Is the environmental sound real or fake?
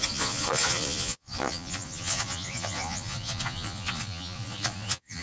fake